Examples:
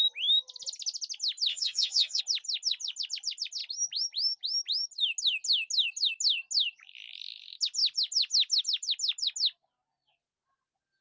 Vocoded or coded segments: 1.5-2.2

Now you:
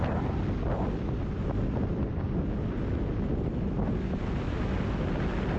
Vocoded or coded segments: none

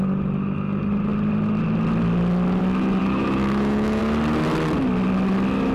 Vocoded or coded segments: 3.0-4.0